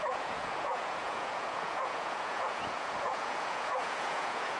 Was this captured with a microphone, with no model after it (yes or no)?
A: no